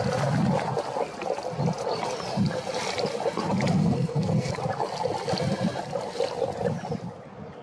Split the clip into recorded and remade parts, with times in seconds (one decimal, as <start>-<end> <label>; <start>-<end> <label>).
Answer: 0.0-3.8 recorded; 3.8-4.5 remade; 4.5-7.6 recorded